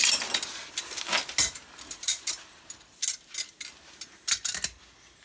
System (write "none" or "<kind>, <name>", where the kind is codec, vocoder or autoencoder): none